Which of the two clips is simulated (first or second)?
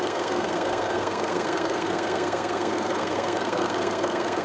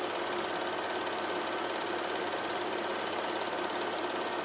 first